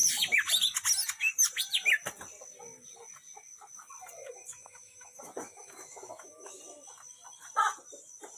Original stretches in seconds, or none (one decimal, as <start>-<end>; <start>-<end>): 0.0-4.2; 6.6-8.4